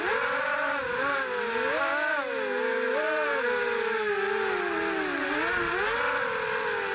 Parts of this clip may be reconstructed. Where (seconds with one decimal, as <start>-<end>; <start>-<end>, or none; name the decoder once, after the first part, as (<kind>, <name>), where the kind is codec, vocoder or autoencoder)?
none